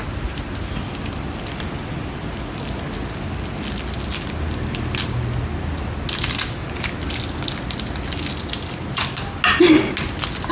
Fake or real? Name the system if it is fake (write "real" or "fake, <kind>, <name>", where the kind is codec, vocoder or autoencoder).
real